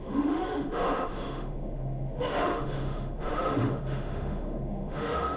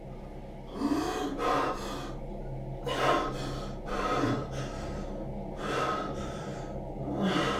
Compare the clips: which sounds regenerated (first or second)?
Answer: first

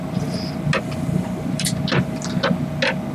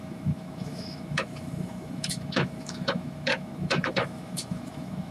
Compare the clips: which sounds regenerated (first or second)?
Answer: second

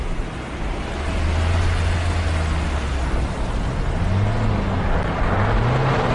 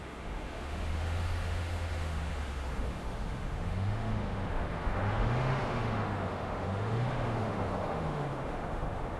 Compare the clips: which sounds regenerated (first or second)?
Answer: second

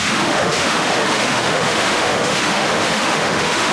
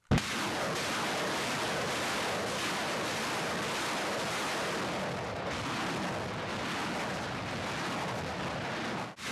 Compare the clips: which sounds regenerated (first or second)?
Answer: first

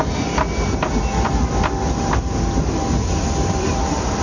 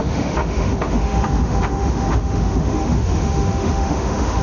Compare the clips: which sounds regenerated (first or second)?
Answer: second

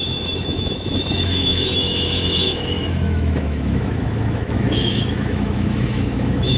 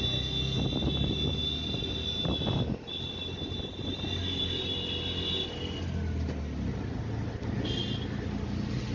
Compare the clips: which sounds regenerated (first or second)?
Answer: first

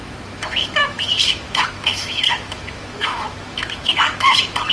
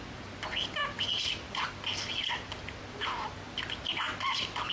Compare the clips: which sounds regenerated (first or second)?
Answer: first